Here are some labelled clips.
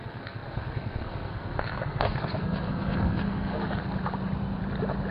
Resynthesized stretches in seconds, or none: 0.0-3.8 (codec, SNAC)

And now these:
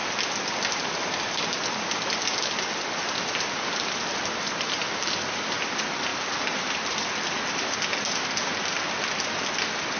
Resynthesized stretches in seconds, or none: 4.7-10.0 (vocoder, BigVGAN v2)

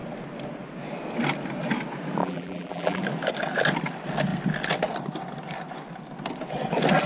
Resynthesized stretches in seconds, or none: 2.2-3.0 (vocoder, BigVGAN v2)

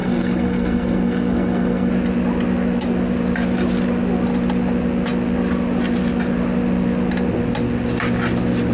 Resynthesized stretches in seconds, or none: 0.0-1.9 (codec, SNAC)